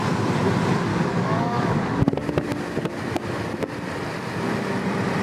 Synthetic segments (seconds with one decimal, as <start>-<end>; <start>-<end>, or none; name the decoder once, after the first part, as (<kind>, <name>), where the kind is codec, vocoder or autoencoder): 0.9-2.0 (codec, DAC)

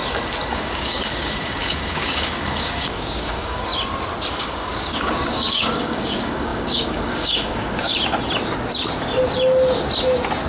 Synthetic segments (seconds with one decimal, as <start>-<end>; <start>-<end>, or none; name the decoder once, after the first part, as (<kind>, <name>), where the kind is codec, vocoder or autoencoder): 0.5-3.7 (codec, DAC); 4.4-7.9

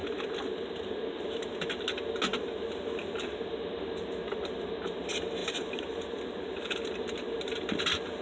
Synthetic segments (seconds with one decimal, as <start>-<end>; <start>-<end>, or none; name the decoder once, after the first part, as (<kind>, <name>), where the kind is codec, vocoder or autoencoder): none